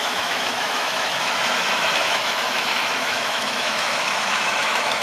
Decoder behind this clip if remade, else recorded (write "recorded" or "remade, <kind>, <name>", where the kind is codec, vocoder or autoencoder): remade, autoencoder, DAC-VAE